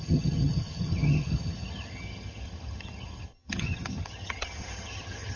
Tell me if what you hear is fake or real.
fake